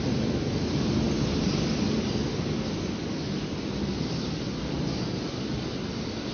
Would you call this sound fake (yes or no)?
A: no